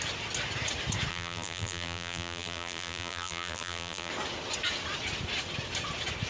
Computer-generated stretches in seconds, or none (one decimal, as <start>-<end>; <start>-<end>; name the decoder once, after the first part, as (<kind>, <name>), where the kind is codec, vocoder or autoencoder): 1.1-4.1 (vocoder, BigVGAN v2)